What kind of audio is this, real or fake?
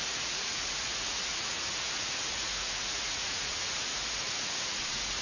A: fake